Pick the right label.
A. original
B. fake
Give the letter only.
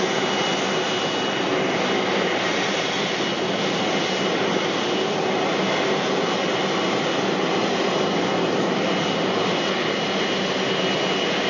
A